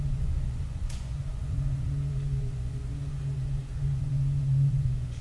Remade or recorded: remade